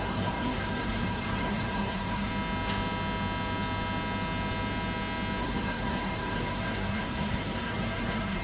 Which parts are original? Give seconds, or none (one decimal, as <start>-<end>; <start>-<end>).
2.3-5.4